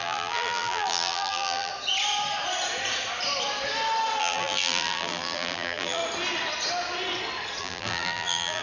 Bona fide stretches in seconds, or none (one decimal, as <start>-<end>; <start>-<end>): 1.7-4.2; 6.0-7.6